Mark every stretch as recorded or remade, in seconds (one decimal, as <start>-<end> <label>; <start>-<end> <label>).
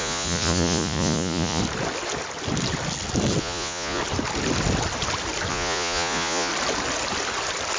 0.0-1.6 remade; 1.6-3.4 recorded; 3.4-4.0 remade; 4.0-5.5 recorded; 5.5-6.5 remade; 6.5-7.8 recorded